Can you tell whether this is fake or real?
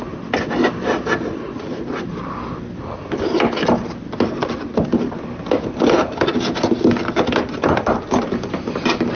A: real